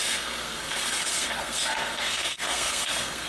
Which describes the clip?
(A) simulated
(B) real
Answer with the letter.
A